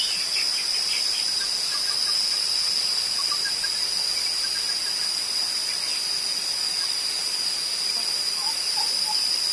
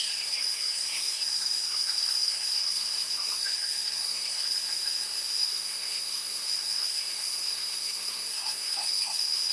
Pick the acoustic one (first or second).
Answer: first